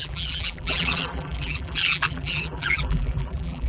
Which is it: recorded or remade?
remade